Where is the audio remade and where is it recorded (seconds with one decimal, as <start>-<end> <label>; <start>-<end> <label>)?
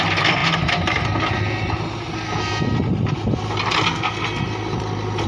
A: 0.0-5.3 recorded